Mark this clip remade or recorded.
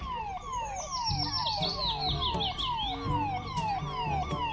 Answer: recorded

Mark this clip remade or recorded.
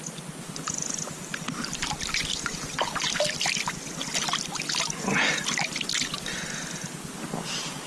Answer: recorded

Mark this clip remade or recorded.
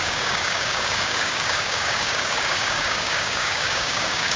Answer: remade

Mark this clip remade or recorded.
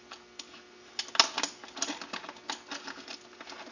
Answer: recorded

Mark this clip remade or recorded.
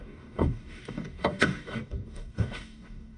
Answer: remade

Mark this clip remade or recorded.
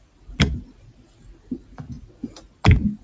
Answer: recorded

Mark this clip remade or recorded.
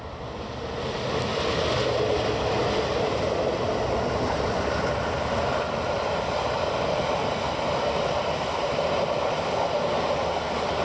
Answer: recorded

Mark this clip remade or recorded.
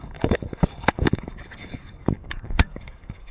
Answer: remade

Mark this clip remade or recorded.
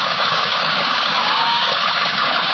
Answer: remade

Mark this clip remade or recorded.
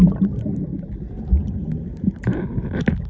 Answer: recorded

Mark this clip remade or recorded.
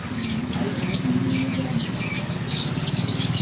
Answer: remade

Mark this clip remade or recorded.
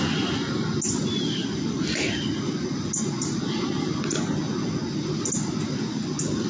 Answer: recorded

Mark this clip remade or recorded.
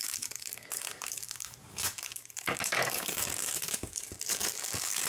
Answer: remade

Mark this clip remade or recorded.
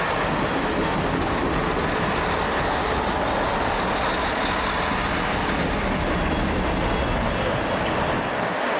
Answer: recorded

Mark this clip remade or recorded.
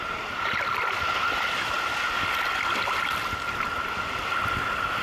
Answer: recorded